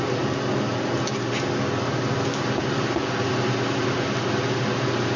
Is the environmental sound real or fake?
real